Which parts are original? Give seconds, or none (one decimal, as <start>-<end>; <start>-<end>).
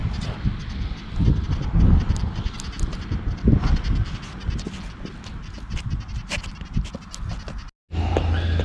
0.0-8.6